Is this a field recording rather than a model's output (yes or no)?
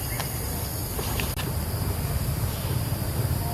no